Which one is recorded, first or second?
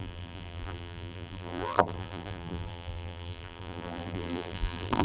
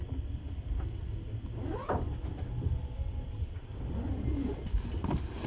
second